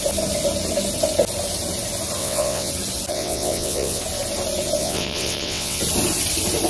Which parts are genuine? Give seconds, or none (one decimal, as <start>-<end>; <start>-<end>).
0.0-2.2; 2.7-3.1; 4.0-4.8; 5.8-6.7